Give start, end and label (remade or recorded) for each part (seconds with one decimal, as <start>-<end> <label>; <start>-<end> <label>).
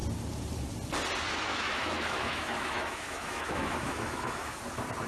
0.0-1.5 recorded; 1.5-4.6 remade; 4.6-5.1 recorded